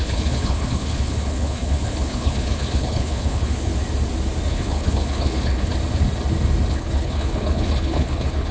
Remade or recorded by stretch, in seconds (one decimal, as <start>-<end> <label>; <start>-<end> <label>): 0.0-3.7 remade; 3.7-4.5 recorded; 4.5-5.7 remade; 5.7-6.7 recorded; 6.7-8.5 remade